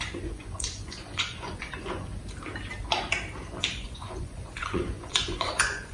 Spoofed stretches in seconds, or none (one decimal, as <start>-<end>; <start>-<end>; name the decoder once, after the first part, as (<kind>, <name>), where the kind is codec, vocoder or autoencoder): 0.0-2.1 (vocoder, Vocos); 3.6-5.9